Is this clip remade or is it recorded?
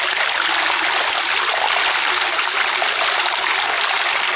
recorded